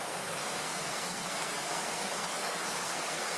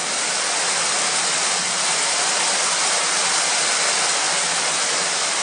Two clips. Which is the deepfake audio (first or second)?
first